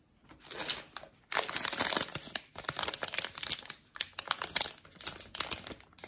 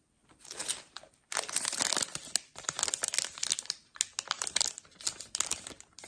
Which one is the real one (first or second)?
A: first